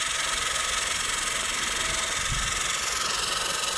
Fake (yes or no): no